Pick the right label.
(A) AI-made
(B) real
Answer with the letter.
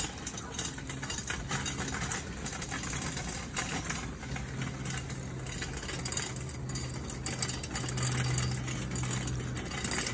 B